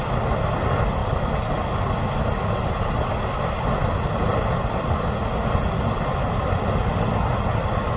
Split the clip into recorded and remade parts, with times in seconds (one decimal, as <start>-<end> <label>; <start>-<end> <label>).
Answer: 0.0-8.0 recorded